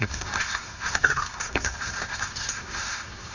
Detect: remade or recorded remade